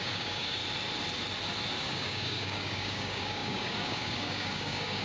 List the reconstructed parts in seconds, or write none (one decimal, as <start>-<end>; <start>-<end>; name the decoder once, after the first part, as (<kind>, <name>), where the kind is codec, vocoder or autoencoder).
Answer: 0.0-0.6 (codec, DAC); 1.8-5.0